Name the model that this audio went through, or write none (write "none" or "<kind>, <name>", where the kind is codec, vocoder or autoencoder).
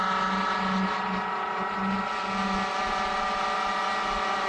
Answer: none